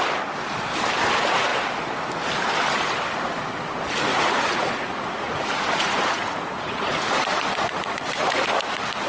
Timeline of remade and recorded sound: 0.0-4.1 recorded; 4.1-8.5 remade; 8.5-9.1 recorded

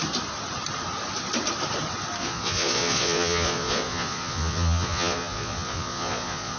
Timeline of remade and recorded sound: 0.0-2.2 recorded; 2.2-6.6 remade